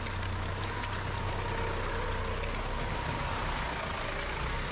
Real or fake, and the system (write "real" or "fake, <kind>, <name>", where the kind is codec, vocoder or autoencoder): real